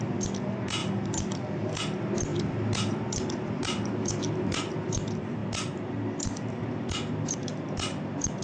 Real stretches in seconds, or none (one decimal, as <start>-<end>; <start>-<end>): 0.0-0.8; 1.7-2.3; 4.9-8.4